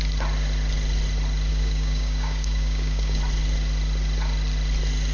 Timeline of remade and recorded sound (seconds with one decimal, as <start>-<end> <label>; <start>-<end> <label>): 0.0-1.5 recorded; 1.5-3.2 remade; 3.2-5.1 recorded